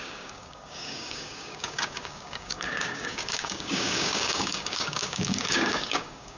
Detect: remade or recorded remade